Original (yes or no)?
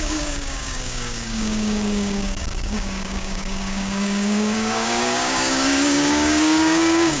no